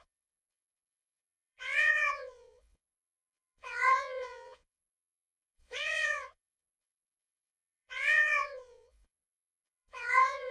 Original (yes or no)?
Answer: no